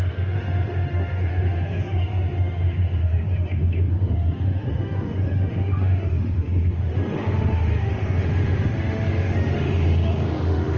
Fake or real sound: fake